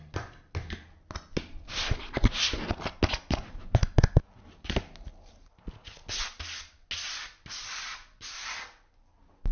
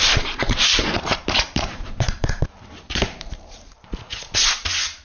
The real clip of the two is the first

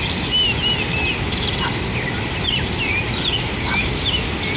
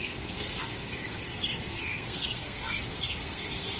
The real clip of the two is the first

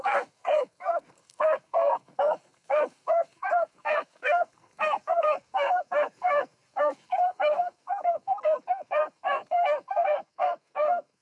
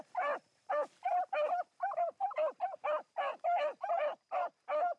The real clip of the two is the second